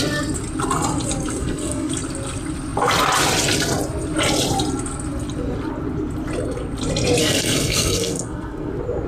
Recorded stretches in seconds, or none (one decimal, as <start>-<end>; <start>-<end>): 0.0-1.4; 1.9-7.2; 8.7-9.1